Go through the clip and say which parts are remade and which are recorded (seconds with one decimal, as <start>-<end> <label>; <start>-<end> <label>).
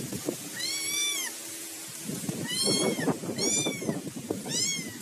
0.0-1.0 recorded; 1.0-4.0 remade; 4.0-5.0 recorded